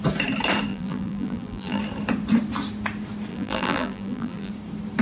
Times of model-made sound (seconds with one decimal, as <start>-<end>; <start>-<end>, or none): 0.7-1.8; 3.3-4.5